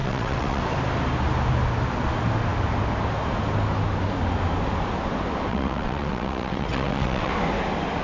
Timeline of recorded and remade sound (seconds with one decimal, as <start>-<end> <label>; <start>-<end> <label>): 0.0-0.6 remade; 0.6-5.5 recorded; 5.5-7.3 remade; 7.3-8.0 recorded